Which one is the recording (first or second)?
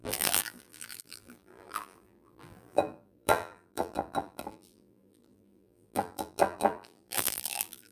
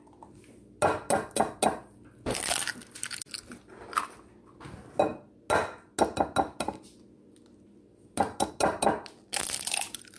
second